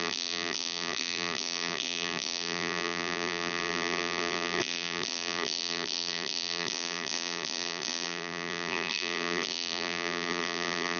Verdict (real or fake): fake